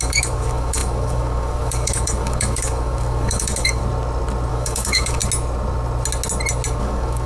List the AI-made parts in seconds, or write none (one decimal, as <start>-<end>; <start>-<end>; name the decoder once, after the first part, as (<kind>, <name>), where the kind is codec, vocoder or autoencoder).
0.0-3.8 (codec, DAC); 4.5-5.2; 6.8-7.3